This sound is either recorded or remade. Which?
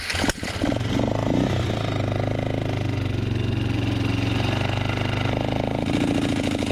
recorded